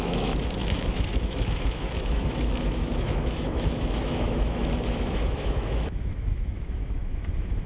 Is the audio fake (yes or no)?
yes